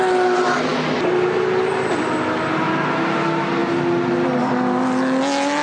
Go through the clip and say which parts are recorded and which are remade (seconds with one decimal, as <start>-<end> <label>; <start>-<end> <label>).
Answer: 0.0-5.6 recorded